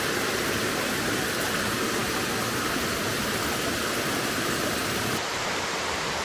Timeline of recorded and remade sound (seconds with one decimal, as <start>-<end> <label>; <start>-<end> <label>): 0.0-2.0 remade; 2.0-3.1 recorded; 3.1-4.8 remade; 4.8-6.2 recorded